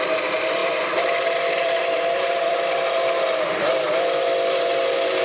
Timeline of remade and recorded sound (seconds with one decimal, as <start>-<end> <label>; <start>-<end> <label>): 0.0-0.6 recorded; 0.6-3.7 remade; 3.7-5.2 recorded